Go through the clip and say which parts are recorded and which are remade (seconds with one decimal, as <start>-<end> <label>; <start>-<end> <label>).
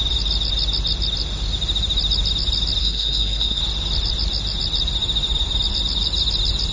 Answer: 0.0-2.8 recorded; 2.8-3.6 remade; 3.6-6.7 recorded